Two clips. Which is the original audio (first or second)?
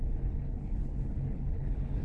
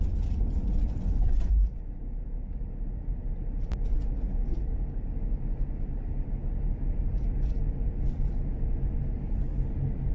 second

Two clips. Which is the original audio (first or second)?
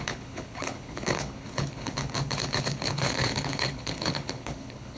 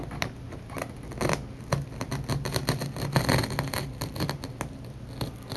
second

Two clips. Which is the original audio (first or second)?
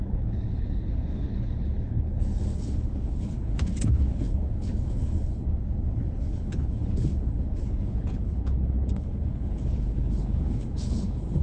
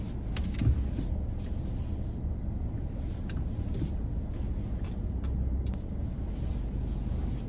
second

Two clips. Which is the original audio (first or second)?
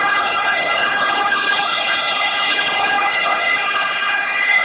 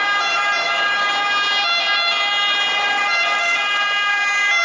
second